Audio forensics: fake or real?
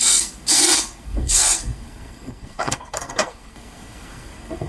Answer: fake